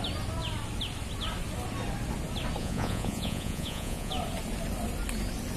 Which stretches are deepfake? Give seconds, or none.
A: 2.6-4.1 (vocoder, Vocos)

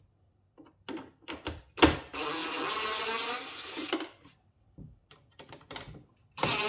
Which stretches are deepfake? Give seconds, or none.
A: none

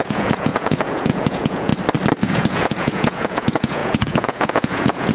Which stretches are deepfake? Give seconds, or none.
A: 0.0-1.7 (vocoder, Vocos); 2.2-5.1

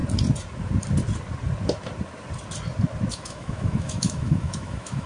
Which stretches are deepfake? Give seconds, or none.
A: 3.1-5.1 (autoencoder, DAC-VAE)

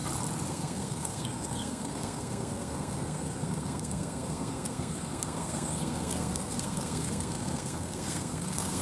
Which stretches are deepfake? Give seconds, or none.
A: 0.5-8.8 (codec, SNAC)

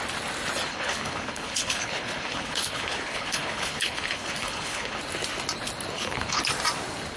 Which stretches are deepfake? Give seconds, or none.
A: 0.7-5.0 (codec, HILCodec); 5.9-6.4

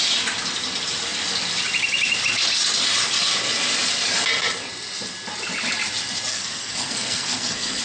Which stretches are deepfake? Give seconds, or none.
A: 6.3-7.8 (codec, SNAC)